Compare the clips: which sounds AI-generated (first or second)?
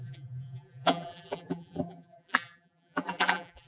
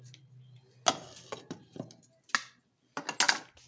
first